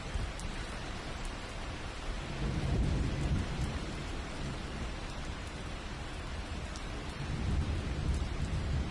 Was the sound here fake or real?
fake